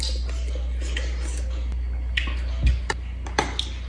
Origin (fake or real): real